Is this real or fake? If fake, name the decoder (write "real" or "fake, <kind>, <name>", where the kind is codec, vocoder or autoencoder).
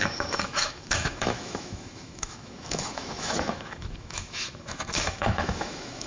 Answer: fake, autoencoder, DAC-VAE